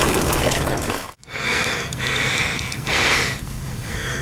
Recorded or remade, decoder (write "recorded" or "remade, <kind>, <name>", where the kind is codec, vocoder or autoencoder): remade, codec, SNAC